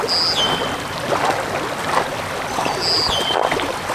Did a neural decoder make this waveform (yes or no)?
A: no